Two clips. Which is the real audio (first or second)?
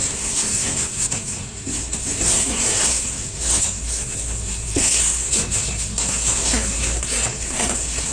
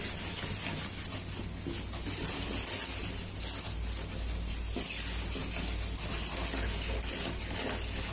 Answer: second